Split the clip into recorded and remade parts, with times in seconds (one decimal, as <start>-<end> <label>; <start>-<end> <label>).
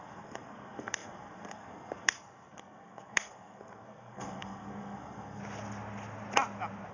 0.0-5.4 remade; 5.4-6.9 recorded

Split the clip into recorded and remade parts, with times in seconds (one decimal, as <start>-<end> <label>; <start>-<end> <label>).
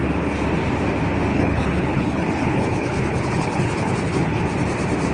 0.0-1.3 recorded; 1.3-4.4 remade; 4.4-5.1 recorded